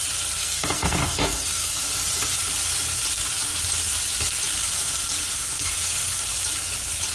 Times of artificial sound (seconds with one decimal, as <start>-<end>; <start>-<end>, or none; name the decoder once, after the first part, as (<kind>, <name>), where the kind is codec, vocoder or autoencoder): 0.4-1.8 (codec, SNAC); 4.6-6.3